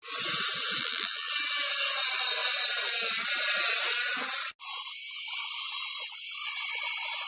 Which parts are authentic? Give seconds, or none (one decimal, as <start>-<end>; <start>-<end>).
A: 0.0-0.8; 1.3-7.3